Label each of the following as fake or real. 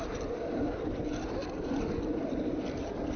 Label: real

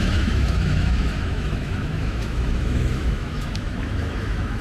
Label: fake